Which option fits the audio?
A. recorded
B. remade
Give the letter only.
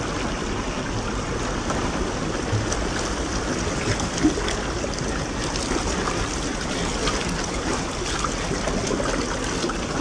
A